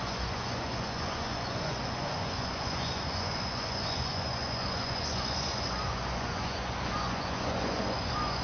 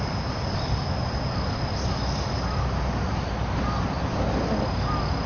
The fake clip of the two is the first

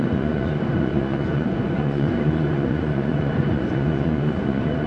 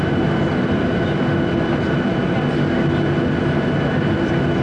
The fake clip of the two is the first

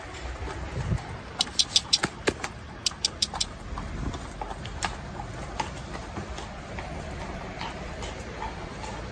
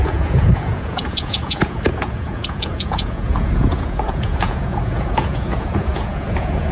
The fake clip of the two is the second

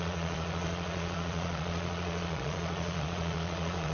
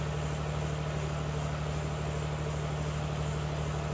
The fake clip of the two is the first